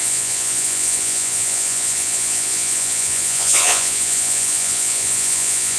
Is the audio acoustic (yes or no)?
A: no